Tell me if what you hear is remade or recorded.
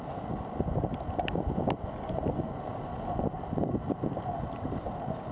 recorded